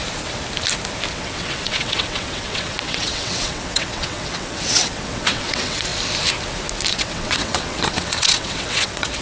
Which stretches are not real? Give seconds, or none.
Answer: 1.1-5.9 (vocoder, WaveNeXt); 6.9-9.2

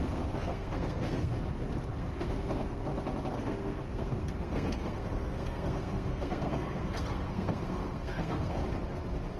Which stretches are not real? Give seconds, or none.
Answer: 0.0-1.3 (codec, SNAC); 1.9-2.8; 3.3-8.6

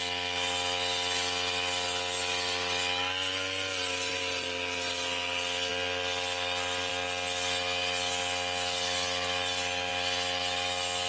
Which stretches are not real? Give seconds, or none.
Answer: none

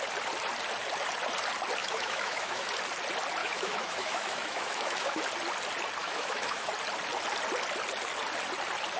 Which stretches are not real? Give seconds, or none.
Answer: 1.8-2.7 (autoencoder, DAC-VAE); 3.4-5.2; 6.0-6.7